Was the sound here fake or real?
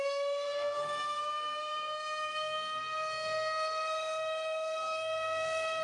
fake